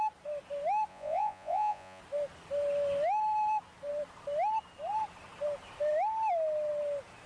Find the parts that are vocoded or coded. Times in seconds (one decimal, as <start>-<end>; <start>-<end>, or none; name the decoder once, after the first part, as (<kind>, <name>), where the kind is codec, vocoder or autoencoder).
0.9-2.0 (vocoder, Vocos)